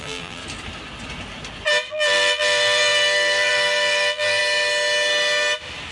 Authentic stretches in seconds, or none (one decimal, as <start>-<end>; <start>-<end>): 0.4-1.9; 4.4-5.9